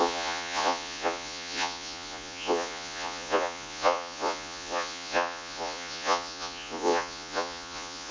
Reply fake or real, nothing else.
fake